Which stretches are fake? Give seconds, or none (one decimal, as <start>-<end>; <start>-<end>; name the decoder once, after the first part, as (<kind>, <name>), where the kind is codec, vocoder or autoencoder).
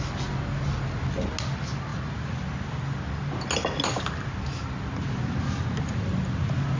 none